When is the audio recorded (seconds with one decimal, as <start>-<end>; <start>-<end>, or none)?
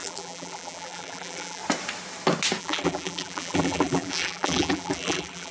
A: 1.6-2.6